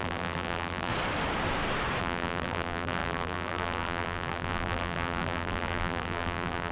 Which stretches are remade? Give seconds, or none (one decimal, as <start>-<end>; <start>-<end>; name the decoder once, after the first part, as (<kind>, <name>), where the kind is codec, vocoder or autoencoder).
0.0-0.9 (vocoder, BigVGAN v2); 2.0-6.7